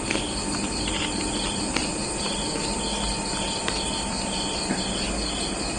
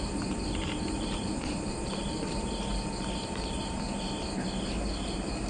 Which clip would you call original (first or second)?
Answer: first